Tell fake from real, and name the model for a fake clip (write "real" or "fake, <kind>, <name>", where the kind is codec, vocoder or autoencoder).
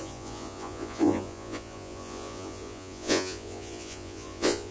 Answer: fake, vocoder, Vocos